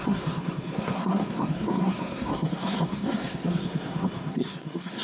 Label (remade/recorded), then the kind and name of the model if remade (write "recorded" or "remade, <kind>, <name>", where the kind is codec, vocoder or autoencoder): remade, codec, SNAC